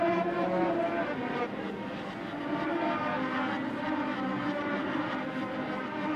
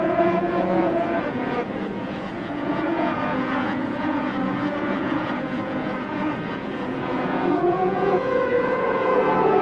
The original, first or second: first